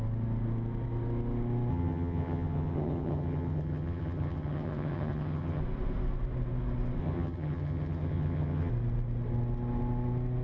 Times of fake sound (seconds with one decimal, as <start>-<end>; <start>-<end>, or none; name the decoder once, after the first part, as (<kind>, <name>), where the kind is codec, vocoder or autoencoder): 1.7-5.6 (vocoder, HiFi-GAN); 7.0-8.7